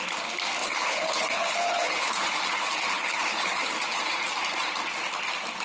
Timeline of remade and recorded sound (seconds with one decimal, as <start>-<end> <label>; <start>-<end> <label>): 0.0-0.6 recorded; 0.6-4.0 remade; 4.0-5.6 recorded